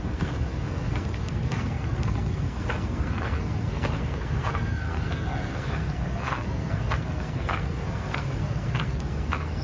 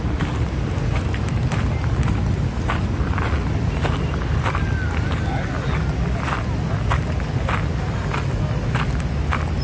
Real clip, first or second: second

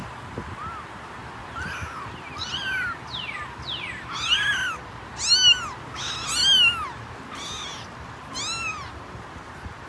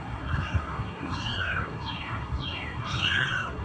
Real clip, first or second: first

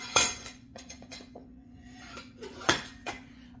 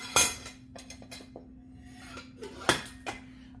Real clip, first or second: second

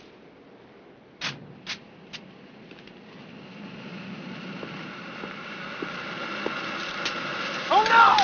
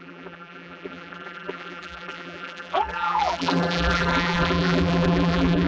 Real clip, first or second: first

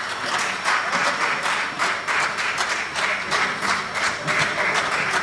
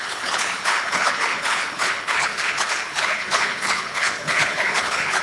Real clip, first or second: first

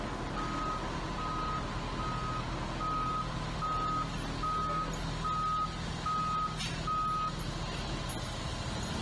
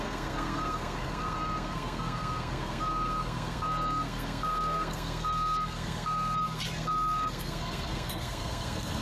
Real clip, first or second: first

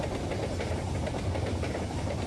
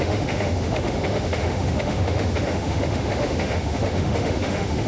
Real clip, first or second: first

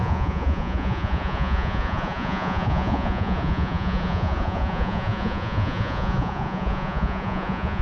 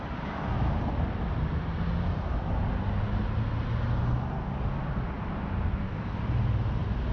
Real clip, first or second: second